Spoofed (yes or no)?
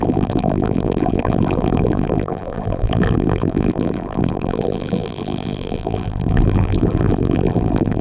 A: yes